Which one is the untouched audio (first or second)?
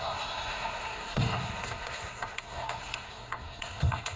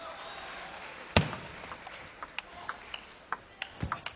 second